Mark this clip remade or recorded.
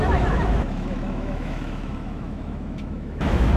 remade